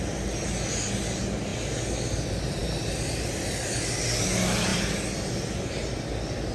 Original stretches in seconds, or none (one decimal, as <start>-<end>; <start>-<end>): 0.0-6.5